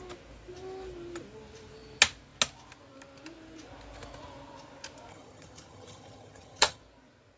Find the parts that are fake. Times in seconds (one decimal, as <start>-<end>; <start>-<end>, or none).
5.1-6.8